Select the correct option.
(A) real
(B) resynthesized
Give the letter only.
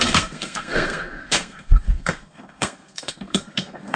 B